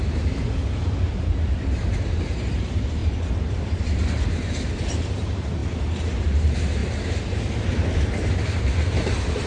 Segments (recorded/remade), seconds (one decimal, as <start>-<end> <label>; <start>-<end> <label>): 0.0-5.6 remade; 5.6-6.3 recorded; 6.3-9.5 remade